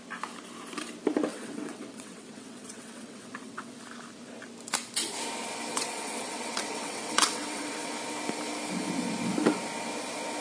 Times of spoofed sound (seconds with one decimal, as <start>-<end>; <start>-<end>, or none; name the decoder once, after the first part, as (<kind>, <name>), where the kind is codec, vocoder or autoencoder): 1.3-3.8 (vocoder, WaveNeXt); 5.7-7.9